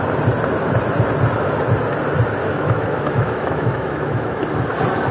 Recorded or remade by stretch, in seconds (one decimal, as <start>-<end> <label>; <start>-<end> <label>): 0.0-2.4 recorded; 2.4-4.4 remade; 4.4-5.1 recorded